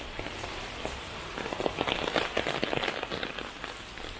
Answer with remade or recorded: recorded